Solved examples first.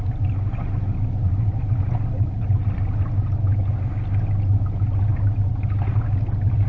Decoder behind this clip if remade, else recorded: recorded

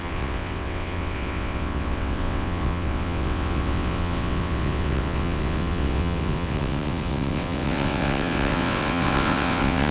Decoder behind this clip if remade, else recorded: remade, vocoder, WaveNeXt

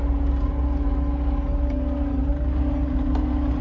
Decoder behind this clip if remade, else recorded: recorded